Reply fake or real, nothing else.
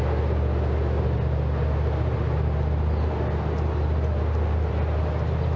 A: real